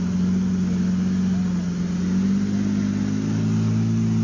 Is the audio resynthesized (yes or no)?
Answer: no